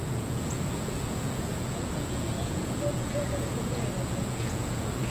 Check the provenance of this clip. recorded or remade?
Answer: remade